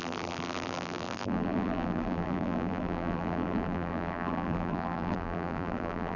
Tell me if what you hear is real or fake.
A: fake